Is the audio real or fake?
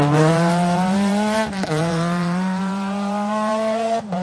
fake